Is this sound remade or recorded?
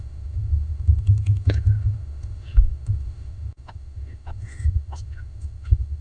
remade